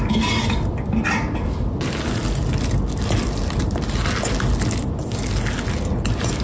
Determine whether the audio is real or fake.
real